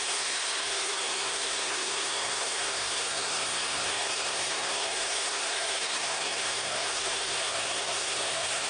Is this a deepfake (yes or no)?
yes